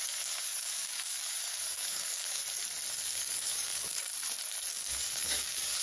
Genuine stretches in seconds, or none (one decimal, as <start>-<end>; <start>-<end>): 2.4-2.9; 4.1-4.7